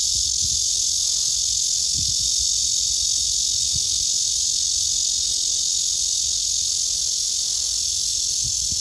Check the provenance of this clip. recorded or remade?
remade